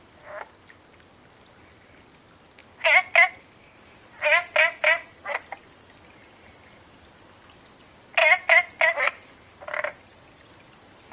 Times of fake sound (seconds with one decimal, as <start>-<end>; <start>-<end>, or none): none